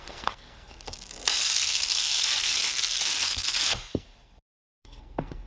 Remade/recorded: remade